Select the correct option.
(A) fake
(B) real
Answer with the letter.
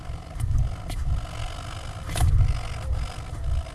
B